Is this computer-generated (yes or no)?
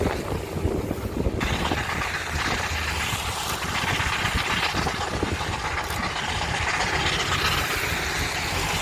no